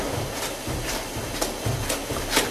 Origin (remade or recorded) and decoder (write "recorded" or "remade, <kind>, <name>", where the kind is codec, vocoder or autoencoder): recorded